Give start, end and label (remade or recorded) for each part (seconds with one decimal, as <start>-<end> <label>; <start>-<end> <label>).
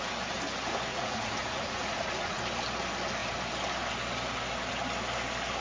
0.0-0.9 recorded; 0.9-2.4 remade; 2.4-5.6 recorded